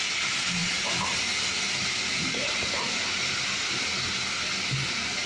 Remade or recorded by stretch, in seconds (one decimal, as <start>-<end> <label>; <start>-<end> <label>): 0.0-5.3 recorded